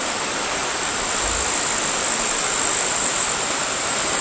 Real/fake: fake